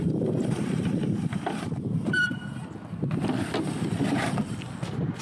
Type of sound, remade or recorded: recorded